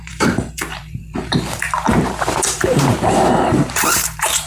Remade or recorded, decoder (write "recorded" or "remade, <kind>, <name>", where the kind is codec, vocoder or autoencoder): remade, vocoder, BigVGAN v2